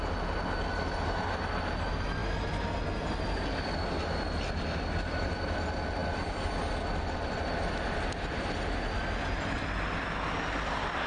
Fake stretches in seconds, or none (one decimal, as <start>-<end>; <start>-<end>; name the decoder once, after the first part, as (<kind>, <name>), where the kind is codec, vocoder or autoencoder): none